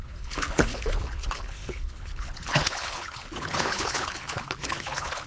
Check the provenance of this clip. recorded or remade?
remade